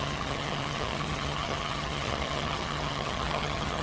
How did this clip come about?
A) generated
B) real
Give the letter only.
A